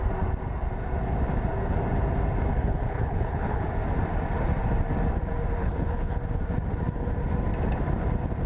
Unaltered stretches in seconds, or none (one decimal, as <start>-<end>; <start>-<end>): 0.0-2.5; 3.6-5.6; 6.2-8.5